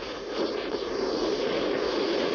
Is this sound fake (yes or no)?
yes